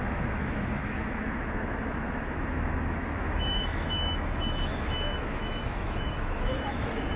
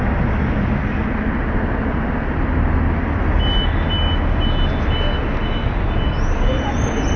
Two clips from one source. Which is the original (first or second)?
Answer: second